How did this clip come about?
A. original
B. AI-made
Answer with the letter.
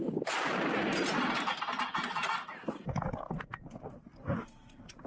A